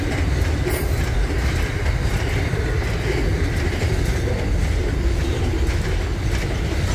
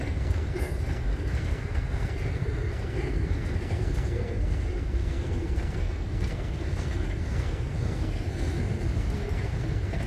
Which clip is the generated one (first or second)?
second